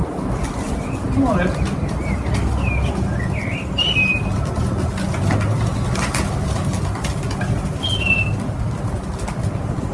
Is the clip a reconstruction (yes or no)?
no